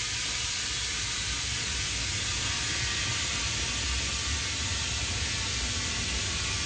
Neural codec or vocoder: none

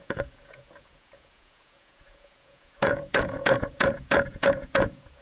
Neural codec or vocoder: vocoder, Vocos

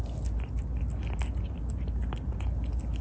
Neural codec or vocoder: none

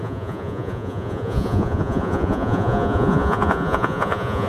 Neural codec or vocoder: vocoder, Vocos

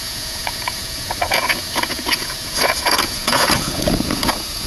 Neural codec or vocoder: vocoder, Vocos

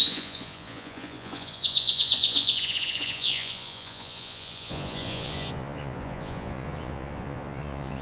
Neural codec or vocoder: vocoder, Vocos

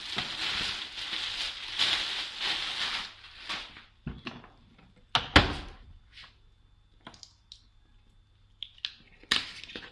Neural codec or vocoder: none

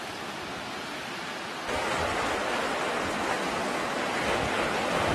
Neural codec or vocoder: none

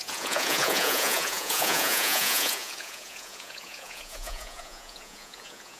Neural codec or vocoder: vocoder, Vocos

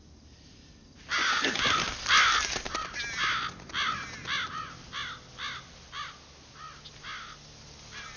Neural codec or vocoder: none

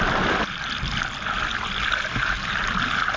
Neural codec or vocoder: none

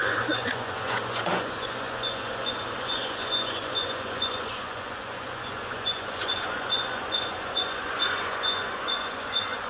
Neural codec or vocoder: vocoder, Vocos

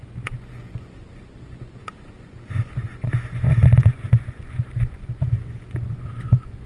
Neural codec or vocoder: vocoder, Vocos